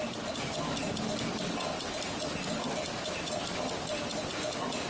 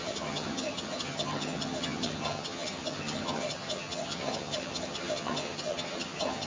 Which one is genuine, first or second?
first